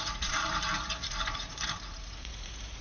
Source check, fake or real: fake